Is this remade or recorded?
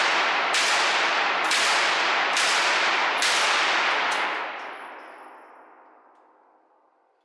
recorded